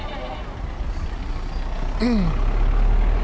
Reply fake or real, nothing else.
real